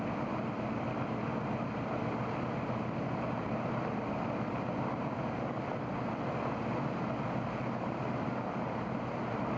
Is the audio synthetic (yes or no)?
no